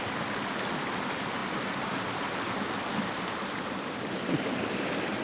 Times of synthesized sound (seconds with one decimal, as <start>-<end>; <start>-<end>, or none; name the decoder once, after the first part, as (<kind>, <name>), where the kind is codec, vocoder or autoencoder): none